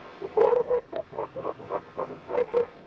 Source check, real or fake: fake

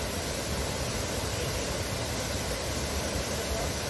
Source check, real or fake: real